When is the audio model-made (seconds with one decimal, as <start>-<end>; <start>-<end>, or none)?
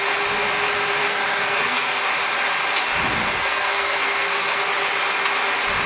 1.0-2.0; 3.2-4.7